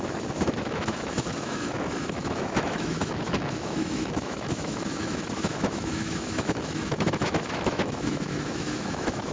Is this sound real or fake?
fake